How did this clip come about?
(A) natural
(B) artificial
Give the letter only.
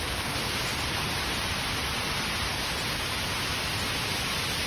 A